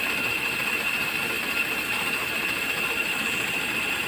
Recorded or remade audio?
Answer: remade